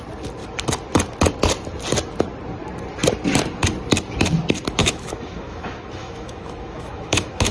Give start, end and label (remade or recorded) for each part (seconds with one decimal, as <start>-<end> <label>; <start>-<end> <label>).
0.0-4.8 recorded; 4.8-7.5 remade